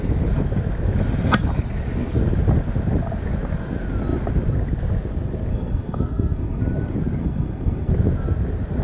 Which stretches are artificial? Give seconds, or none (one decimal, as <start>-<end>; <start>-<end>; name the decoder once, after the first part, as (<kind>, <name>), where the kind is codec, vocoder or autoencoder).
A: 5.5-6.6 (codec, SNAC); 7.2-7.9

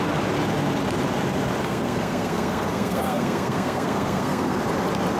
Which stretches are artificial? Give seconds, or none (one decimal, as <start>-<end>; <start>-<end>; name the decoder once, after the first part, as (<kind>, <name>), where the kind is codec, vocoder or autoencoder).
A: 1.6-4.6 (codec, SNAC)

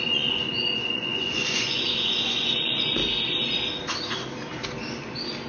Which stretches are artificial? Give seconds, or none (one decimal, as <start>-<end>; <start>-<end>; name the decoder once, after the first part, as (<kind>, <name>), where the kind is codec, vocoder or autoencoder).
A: 0.0-3.0 (vocoder, Vocos)

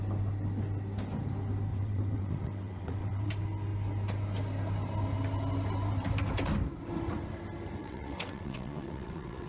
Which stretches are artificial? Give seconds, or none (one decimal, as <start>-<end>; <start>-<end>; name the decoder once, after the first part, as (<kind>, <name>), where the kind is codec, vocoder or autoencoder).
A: 1.7-3.3 (vocoder, WaveNeXt); 7.8-9.5

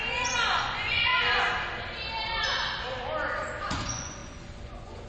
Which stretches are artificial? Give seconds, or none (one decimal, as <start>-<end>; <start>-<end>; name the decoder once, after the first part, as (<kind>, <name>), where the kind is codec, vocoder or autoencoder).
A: 0.0-1.1 (vocoder, Vocos); 3.6-5.1